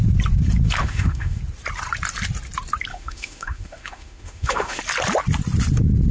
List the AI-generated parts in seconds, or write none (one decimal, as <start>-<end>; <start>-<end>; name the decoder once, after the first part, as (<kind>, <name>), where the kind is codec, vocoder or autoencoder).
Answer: 0.8-1.4 (autoencoder, DAC-VAE); 2.9-4.8